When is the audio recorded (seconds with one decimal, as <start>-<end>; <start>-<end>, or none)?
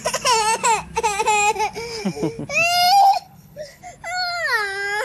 0.0-3.0; 3.8-5.0